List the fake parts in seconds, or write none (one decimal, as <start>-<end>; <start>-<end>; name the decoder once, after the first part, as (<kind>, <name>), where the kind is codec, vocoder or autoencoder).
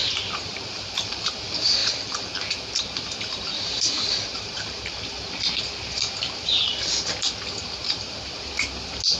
0.0-1.3 (vocoder, BigVGAN v2); 4.3-6.6; 7.8-8.5